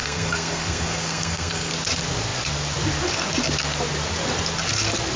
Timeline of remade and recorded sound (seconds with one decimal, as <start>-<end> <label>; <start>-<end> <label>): 0.0-1.7 remade; 1.7-5.2 recorded